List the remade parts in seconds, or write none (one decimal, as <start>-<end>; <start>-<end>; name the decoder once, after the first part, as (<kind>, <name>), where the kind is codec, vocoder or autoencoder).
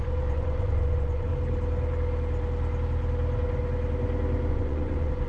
0.0-1.3 (vocoder, Vocos); 4.5-5.3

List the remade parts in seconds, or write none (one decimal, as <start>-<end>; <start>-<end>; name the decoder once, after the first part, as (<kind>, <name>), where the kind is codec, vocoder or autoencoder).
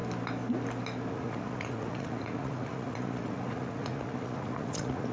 1.1-5.1 (vocoder, Vocos)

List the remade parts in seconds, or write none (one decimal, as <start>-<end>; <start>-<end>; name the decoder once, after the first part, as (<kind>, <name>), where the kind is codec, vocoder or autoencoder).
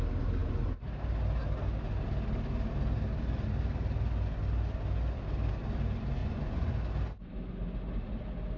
6.2-6.7 (vocoder, Vocos)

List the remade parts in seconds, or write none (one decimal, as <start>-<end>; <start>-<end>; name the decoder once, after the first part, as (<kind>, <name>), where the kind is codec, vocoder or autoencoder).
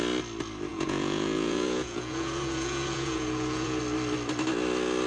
0.7-3.8 (vocoder, Vocos)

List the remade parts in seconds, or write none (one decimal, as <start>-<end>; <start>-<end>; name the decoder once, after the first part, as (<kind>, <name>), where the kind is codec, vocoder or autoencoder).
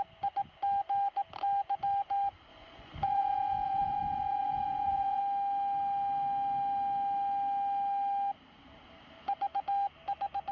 2.5-5.2 (vocoder, Vocos)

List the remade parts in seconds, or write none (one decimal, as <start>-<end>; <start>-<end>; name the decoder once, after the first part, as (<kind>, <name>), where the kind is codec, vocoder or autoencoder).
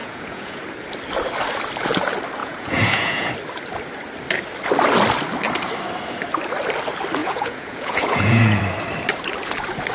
0.0-0.6 (vocoder, Vocos); 2.4-3.3; 7.2-8.6